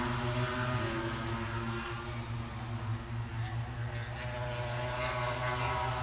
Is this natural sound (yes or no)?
yes